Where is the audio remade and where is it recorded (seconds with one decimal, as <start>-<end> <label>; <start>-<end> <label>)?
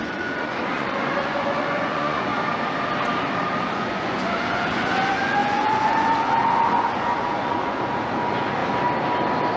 0.0-2.3 remade; 2.3-3.6 recorded; 3.6-8.6 remade; 8.6-9.6 recorded